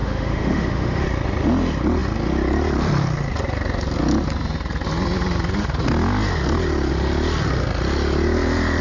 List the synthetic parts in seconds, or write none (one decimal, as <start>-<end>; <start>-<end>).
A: 0.0-1.0